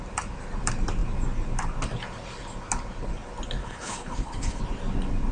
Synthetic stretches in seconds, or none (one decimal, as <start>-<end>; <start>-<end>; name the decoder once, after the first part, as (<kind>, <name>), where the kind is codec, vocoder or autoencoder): 3.6-4.6 (codec, HILCodec)